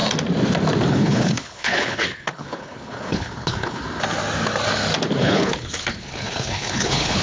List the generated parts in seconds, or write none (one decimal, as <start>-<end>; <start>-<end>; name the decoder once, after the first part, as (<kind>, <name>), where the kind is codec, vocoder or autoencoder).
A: 0.9-3.8 (codec, HILCodec); 5.2-7.2